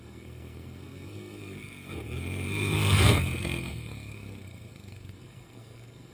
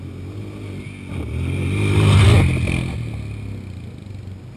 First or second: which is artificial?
first